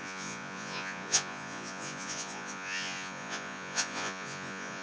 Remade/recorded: remade